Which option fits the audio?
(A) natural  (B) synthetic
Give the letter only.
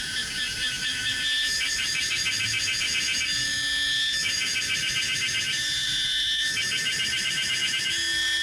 B